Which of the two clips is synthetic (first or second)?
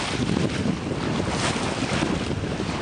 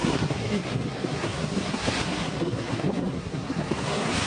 second